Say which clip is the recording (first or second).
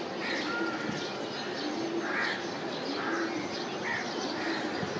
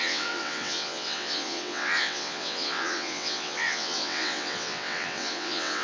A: first